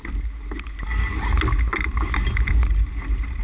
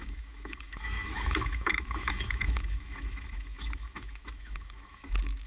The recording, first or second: first